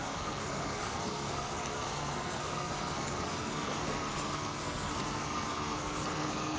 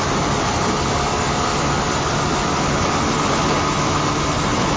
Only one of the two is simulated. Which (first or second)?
first